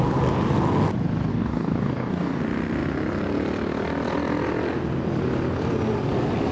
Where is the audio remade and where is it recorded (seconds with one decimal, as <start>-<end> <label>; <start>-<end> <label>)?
0.0-1.3 recorded; 1.3-2.4 remade; 2.4-6.5 recorded